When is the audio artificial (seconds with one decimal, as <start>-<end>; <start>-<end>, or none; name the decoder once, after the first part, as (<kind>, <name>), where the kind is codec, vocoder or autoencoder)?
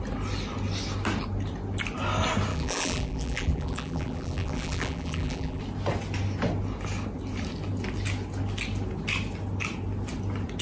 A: 2.5-5.6 (vocoder, BigVGAN v2)